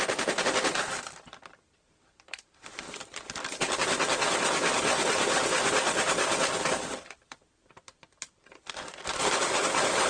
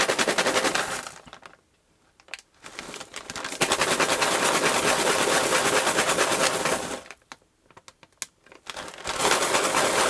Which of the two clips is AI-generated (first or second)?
first